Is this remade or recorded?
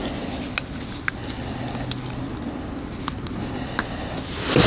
recorded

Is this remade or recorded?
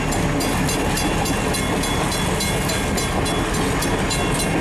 recorded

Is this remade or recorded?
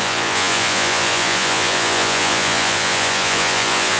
remade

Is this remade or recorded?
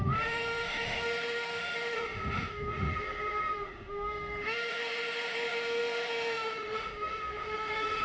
remade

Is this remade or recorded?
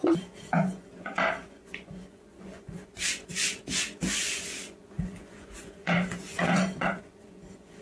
remade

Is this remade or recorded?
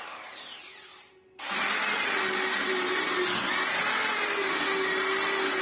recorded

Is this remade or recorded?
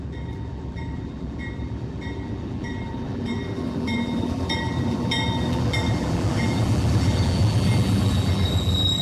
remade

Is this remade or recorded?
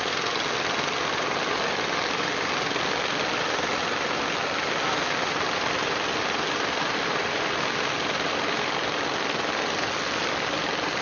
recorded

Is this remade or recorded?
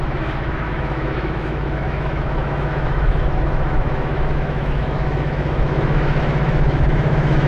remade